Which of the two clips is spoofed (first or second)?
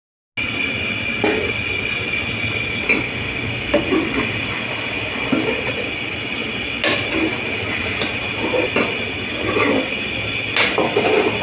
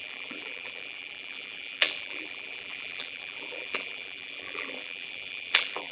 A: second